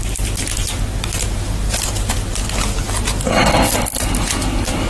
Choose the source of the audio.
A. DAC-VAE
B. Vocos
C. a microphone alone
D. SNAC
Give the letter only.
C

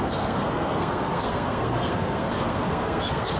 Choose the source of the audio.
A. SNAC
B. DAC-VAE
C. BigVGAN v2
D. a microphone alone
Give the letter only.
A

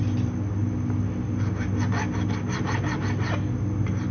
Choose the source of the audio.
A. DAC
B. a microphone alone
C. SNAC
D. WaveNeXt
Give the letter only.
B